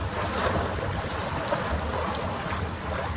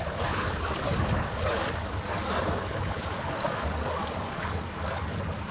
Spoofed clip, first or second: second